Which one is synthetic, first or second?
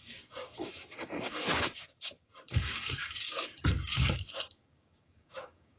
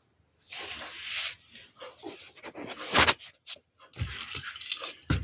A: first